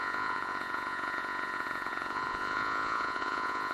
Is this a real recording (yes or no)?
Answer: no